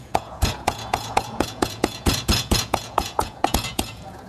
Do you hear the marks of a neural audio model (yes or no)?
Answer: yes